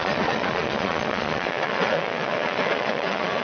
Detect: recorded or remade remade